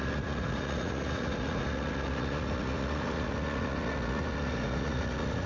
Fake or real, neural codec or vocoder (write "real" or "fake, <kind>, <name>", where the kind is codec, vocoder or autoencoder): fake, vocoder, Vocos